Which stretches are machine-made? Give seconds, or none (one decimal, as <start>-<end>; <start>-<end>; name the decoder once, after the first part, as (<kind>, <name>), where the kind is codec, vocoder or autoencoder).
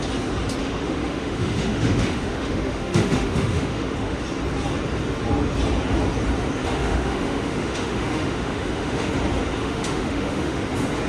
0.6-4.2 (autoencoder, DAC-VAE); 6.7-9.1; 9.6-10.6